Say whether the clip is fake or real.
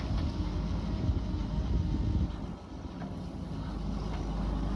real